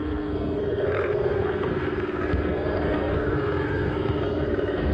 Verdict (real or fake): fake